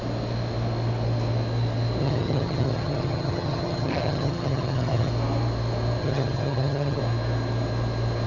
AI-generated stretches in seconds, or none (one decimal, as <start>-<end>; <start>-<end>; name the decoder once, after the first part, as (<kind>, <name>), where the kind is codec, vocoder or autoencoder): 2.0-5.1 (vocoder, HiFi-GAN); 6.0-7.0